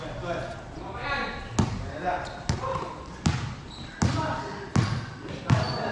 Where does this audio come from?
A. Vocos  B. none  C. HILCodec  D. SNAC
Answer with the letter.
B